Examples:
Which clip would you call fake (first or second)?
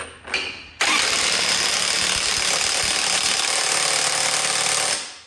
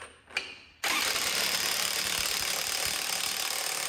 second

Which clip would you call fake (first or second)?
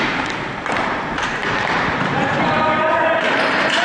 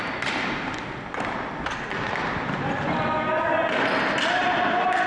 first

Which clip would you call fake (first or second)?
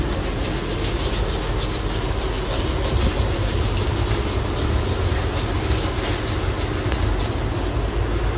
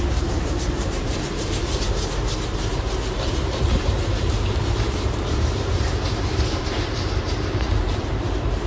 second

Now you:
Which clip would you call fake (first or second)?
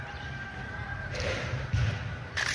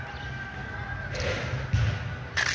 first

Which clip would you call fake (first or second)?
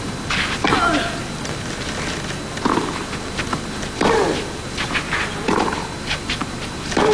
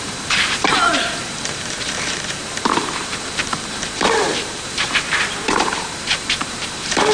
second